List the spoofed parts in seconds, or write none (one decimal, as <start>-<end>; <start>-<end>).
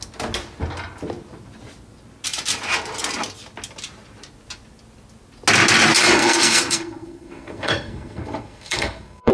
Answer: 6.0-9.3